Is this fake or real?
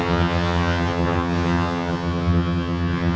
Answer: fake